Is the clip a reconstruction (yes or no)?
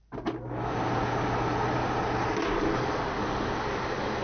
no